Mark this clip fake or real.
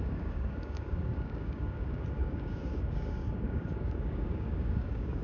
fake